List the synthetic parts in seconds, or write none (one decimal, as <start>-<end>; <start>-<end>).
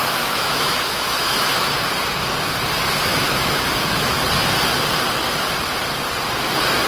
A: 0.0-1.7; 3.1-4.3